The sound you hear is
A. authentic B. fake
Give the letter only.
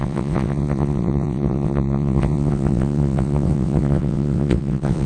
B